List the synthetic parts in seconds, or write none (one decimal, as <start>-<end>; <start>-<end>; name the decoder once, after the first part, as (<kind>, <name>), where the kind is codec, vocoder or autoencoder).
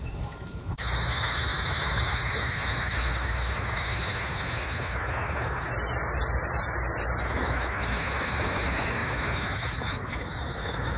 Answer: 0.0-5.7 (autoencoder, DAC-VAE); 7.2-11.0